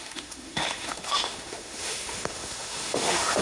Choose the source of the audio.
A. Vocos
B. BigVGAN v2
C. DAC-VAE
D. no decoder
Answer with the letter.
C